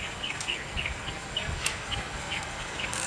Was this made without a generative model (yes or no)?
no